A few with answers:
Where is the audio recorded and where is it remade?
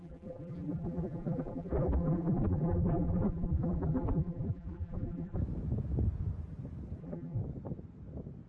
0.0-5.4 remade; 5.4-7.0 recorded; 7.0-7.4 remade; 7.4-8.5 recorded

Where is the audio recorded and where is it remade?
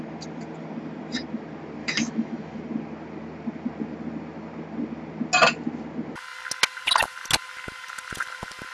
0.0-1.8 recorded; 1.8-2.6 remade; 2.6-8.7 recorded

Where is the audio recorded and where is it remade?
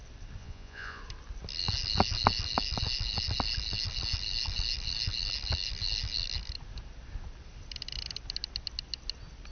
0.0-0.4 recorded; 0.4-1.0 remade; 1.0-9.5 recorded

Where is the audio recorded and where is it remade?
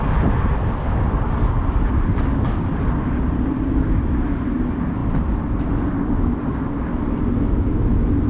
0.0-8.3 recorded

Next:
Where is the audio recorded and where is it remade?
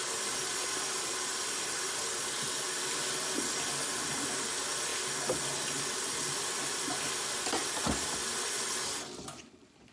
0.0-9.9 recorded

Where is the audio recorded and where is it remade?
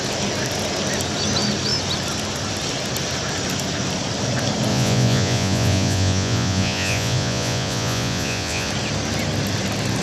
0.0-4.7 recorded; 4.7-8.7 remade; 8.7-10.0 recorded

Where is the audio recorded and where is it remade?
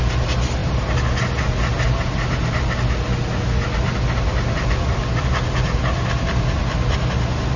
0.0-7.6 recorded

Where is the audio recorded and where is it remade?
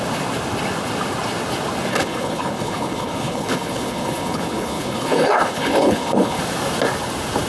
0.0-1.9 recorded; 1.9-6.4 remade; 6.4-7.5 recorded